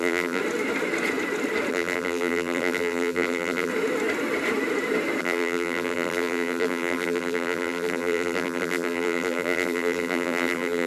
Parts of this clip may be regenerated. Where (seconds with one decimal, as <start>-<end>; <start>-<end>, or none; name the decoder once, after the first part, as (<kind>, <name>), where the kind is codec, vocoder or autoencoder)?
0.0-0.4 (vocoder, BigVGAN v2); 1.7-3.7; 5.2-10.9